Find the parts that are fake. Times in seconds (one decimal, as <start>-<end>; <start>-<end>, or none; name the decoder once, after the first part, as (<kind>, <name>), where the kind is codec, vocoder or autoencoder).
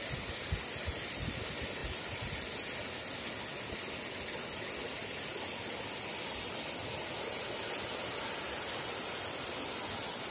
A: none